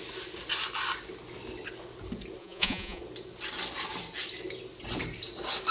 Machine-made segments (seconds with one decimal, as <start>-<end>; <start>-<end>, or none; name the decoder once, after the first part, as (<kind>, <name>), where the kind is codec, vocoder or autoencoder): 2.4-3.0 (vocoder, Vocos)